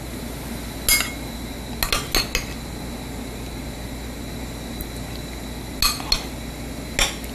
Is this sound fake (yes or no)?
no